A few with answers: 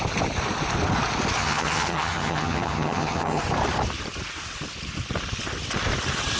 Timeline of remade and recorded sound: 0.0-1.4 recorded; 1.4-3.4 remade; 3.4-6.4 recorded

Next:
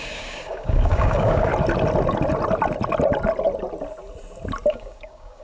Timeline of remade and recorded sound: 0.0-1.5 remade; 1.5-4.7 recorded; 4.7-5.4 remade

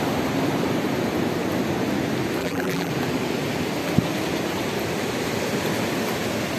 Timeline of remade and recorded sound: 0.0-2.4 recorded; 2.4-2.9 remade; 2.9-6.6 recorded

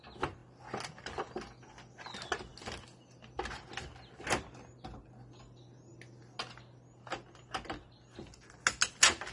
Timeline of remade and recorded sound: 0.0-9.3 recorded

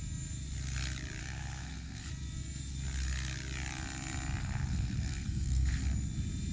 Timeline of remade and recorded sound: 0.0-1.2 recorded; 1.2-2.1 remade; 2.1-4.4 recorded; 4.4-5.8 remade; 5.8-6.5 recorded

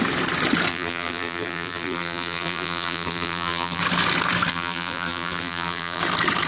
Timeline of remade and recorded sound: 0.0-0.7 recorded; 0.7-3.8 remade; 3.8-4.5 recorded; 4.5-6.0 remade; 6.0-6.5 recorded